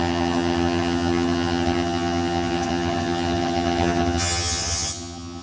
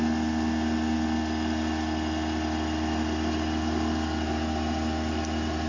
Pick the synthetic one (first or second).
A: first